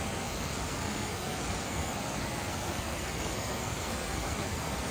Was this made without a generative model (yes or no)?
no